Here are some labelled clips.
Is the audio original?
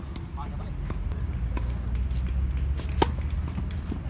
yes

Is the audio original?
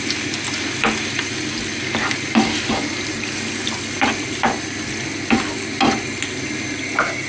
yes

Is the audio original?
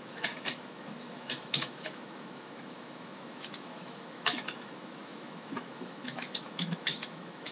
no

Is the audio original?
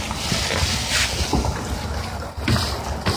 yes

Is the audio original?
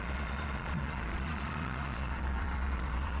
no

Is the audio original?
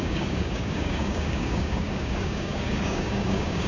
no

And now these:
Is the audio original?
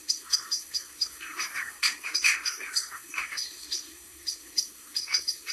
no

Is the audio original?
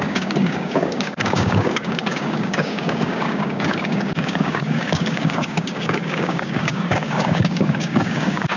no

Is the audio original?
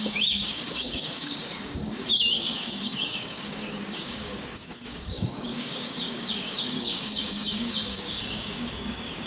no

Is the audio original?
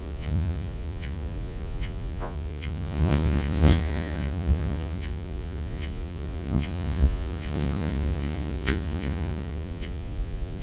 no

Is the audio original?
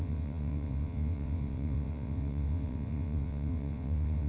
no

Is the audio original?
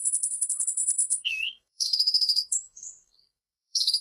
no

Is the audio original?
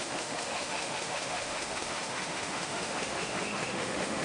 no